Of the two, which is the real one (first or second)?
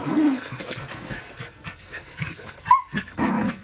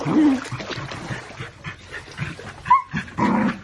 second